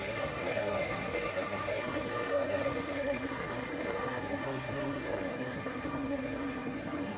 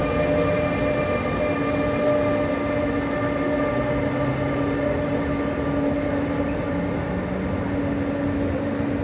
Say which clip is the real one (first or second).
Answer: second